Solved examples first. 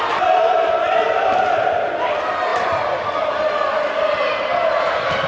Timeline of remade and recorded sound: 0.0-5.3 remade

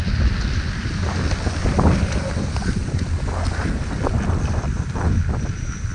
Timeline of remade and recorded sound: 0.0-2.8 recorded; 2.8-4.9 remade; 4.9-5.9 recorded

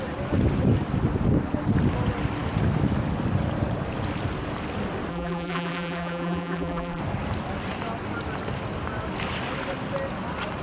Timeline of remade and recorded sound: 0.0-5.1 recorded; 5.1-7.0 remade; 7.0-10.6 recorded

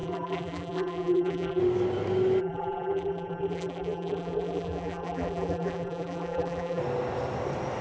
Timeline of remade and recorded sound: 0.0-1.6 remade; 1.6-2.4 recorded; 2.4-6.8 remade; 6.8-7.8 recorded